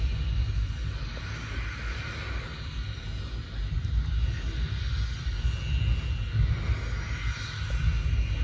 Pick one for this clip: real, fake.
real